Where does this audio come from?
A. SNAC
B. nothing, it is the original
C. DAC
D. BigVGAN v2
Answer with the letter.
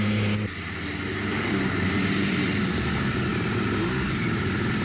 D